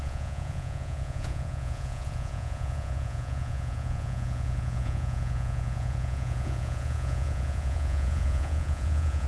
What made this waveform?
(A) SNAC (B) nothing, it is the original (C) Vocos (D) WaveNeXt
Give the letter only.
C